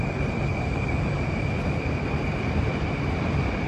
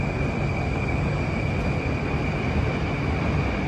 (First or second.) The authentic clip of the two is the second